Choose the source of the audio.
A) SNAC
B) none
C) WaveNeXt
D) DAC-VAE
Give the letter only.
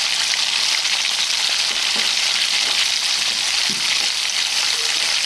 B